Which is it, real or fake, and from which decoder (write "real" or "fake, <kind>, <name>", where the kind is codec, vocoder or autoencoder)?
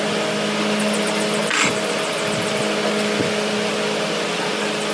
real